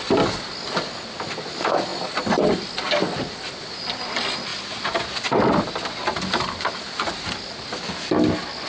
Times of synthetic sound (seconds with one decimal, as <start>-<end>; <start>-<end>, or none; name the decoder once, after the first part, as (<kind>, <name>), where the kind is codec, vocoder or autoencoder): none